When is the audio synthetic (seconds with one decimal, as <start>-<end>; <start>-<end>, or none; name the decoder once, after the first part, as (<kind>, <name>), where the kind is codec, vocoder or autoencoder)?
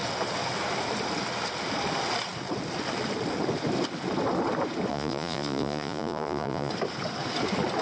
4.9-6.7 (vocoder, Vocos)